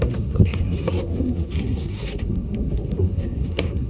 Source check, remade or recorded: remade